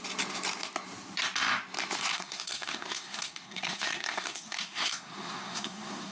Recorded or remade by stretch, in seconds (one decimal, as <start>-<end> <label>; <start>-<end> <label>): 0.0-2.1 recorded; 2.1-6.1 remade